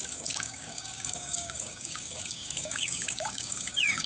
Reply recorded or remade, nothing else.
remade